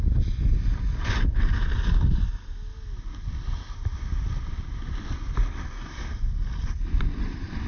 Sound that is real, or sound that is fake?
real